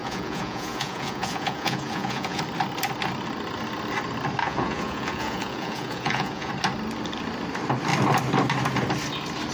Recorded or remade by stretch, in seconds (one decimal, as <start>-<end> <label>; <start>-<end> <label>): 0.0-2.4 remade; 2.4-4.4 recorded; 4.4-6.5 remade; 6.5-9.5 recorded